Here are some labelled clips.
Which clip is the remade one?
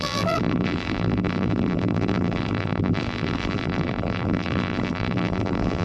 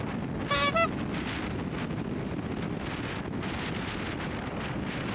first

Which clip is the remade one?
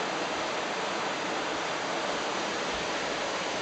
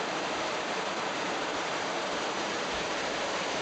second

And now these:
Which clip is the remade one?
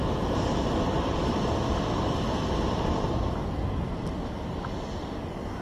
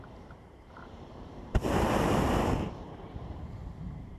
second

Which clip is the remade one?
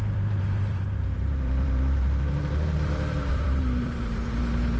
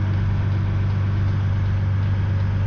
first